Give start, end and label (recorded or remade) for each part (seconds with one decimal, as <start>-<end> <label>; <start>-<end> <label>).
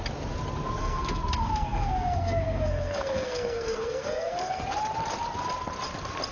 0.0-0.8 recorded; 0.8-4.6 remade; 4.6-6.3 recorded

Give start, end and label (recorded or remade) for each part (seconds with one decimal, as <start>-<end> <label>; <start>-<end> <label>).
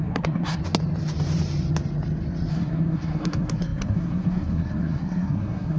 0.0-0.6 remade; 0.6-2.5 recorded; 2.5-5.8 remade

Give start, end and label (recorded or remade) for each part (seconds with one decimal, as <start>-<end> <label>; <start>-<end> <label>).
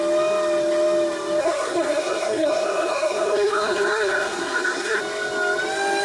0.0-1.4 recorded; 1.4-5.0 remade; 5.0-6.0 recorded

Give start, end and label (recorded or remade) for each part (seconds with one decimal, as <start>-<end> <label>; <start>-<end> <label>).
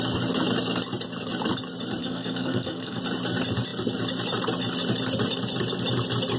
0.0-2.0 recorded; 2.0-3.0 remade; 3.0-6.4 recorded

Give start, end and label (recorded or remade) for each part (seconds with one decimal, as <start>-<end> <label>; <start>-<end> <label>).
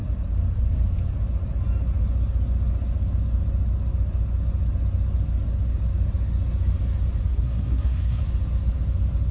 0.0-7.2 recorded; 7.2-8.2 remade; 8.2-9.3 recorded